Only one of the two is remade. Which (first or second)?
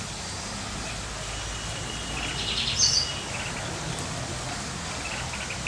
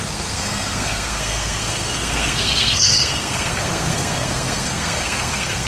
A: second